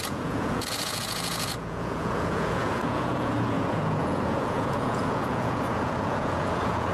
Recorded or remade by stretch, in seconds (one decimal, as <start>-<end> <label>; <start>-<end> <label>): 0.0-6.9 remade